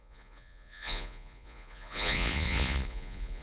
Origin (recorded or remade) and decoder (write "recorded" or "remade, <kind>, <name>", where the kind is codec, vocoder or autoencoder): remade, vocoder, Vocos